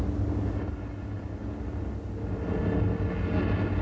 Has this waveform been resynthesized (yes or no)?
no